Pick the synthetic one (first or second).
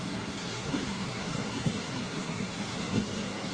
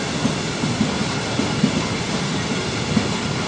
first